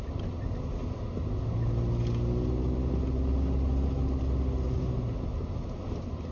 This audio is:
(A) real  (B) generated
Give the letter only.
A